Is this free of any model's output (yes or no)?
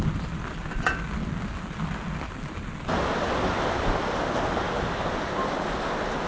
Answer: yes